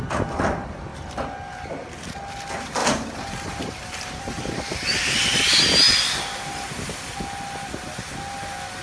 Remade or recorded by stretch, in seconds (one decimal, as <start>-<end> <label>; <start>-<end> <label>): 0.0-2.8 recorded; 2.8-5.0 remade; 5.0-8.8 recorded